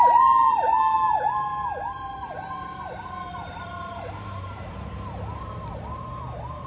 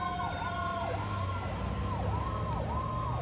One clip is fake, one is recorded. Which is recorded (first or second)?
second